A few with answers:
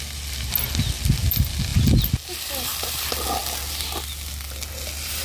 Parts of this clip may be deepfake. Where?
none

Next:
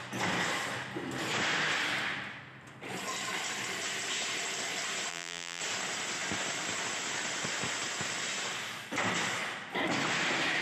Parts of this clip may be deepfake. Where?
5.1-5.6 (vocoder, BigVGAN v2)